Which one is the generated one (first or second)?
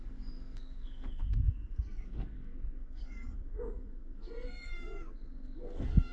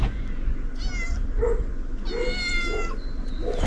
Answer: first